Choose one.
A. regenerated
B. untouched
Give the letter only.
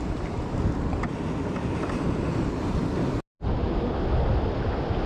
B